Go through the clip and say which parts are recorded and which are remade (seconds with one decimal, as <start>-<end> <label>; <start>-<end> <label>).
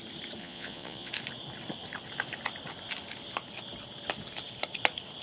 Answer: 0.0-0.4 recorded; 0.4-1.1 remade; 1.1-5.2 recorded